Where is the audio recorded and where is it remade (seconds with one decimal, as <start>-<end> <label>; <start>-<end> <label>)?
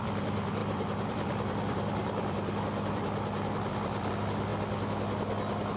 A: 0.0-4.5 remade; 4.5-5.8 recorded